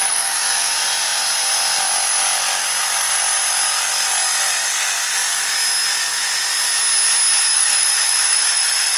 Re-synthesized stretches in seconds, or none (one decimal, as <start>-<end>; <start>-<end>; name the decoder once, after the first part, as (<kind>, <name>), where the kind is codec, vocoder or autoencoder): 0.0-0.7 (autoencoder, DAC-VAE); 7.5-9.0